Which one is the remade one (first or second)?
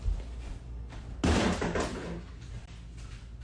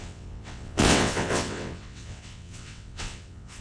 second